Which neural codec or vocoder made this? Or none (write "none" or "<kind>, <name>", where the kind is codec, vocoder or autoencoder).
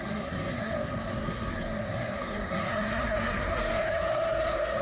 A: codec, SNAC